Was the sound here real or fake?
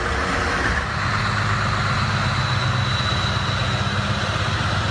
real